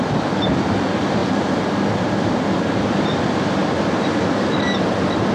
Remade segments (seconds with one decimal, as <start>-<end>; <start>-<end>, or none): 1.2-2.9